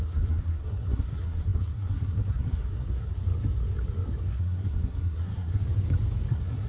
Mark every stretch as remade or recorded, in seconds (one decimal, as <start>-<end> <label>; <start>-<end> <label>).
0.0-3.1 remade; 3.1-4.2 recorded; 4.2-5.6 remade; 5.6-6.3 recorded; 6.3-6.7 remade